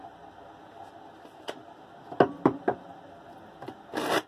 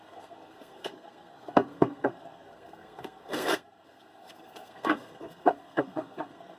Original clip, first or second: first